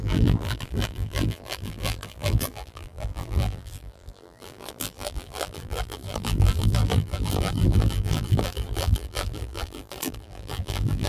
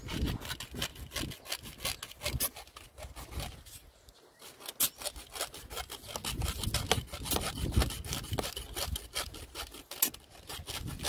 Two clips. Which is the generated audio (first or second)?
first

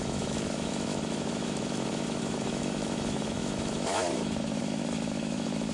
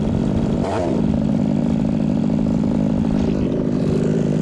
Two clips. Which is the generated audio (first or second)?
first